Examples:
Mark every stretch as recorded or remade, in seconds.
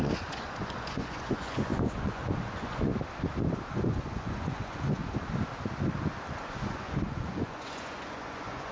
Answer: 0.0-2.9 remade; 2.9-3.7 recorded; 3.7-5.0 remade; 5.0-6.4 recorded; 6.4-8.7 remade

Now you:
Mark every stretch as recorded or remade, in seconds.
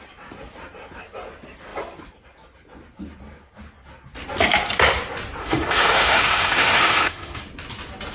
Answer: 0.0-5.4 recorded; 5.4-7.4 remade; 7.4-8.1 recorded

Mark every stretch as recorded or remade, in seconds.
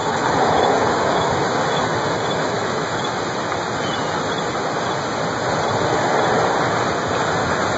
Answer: 0.0-3.2 remade; 3.2-7.8 recorded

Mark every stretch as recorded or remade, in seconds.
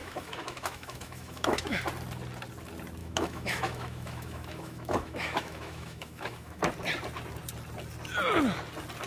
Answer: 0.0-1.8 remade; 1.8-3.0 recorded; 3.0-6.6 remade; 6.6-9.1 recorded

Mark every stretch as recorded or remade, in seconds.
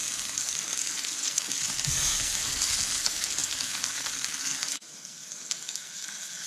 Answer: 0.0-6.5 remade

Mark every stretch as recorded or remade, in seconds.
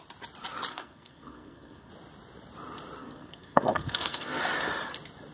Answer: 0.0-0.7 recorded; 0.7-1.9 remade; 1.9-3.0 recorded; 3.0-4.4 remade; 4.4-5.3 recorded